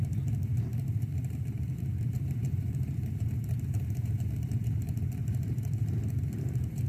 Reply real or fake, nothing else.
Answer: fake